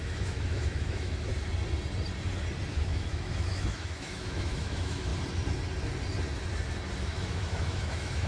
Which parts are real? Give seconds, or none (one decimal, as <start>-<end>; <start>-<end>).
1.3-2.7; 5.1-7.0